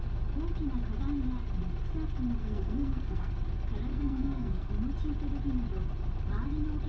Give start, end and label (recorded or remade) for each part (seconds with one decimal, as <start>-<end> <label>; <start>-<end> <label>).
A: 0.0-2.4 recorded; 2.4-3.3 remade; 3.3-3.9 recorded; 3.9-4.7 remade; 4.7-6.9 recorded